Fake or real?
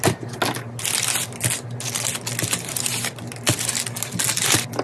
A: real